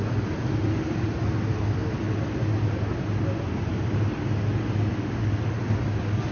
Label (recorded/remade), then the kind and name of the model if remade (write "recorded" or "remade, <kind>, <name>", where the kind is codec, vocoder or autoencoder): recorded